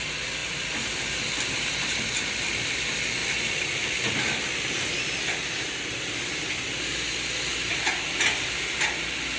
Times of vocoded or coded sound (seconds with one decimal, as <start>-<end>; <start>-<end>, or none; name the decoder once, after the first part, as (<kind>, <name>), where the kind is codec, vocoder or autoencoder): none

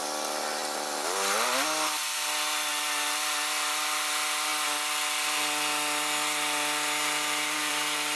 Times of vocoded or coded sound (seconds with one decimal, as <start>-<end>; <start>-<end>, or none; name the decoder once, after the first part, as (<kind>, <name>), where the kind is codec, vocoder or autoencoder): none